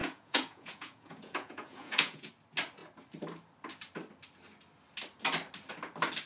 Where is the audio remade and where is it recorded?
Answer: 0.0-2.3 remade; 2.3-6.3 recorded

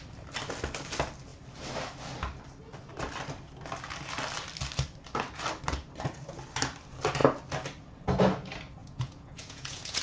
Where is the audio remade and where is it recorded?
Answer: 0.0-8.8 recorded; 8.8-10.0 remade

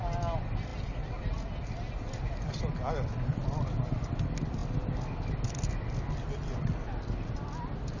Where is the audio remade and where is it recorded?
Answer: 0.0-8.0 recorded

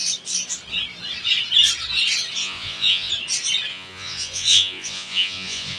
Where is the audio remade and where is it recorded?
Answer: 0.0-2.4 recorded; 2.4-3.1 remade; 3.1-3.7 recorded; 3.7-5.8 remade

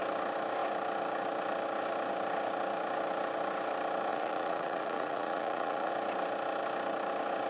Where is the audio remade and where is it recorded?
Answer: 0.0-4.1 recorded; 4.1-5.9 remade; 5.9-7.5 recorded